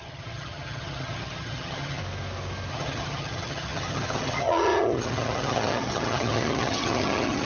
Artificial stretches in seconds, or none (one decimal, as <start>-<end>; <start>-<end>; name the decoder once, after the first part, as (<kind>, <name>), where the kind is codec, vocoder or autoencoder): 0.0-2.0 (vocoder, HiFi-GAN); 2.7-7.5